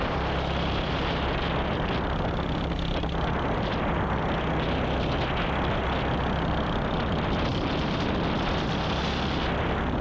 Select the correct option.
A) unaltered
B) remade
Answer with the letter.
A